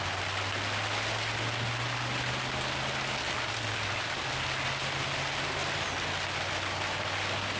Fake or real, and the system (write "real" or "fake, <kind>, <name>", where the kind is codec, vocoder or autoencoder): real